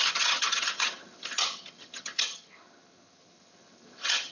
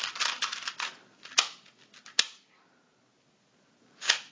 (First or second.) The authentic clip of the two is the second